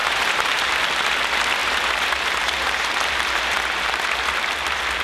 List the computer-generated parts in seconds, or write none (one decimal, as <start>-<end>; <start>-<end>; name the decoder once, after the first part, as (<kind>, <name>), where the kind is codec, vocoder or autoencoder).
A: 0.0-0.7 (vocoder, BigVGAN v2); 1.6-4.2